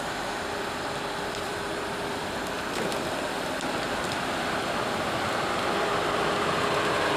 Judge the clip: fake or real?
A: fake